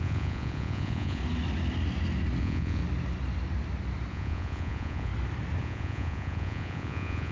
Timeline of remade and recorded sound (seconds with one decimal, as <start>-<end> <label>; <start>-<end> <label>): 0.0-1.2 remade; 1.2-2.4 recorded; 2.4-2.8 remade; 2.8-4.1 recorded; 4.1-5.1 remade; 5.1-5.6 recorded; 5.6-7.3 remade